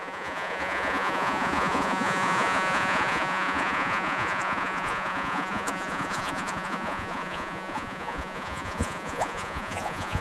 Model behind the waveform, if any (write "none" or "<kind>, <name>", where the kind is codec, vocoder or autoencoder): vocoder, Vocos